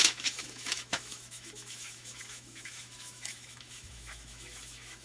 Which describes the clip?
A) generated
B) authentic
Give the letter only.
A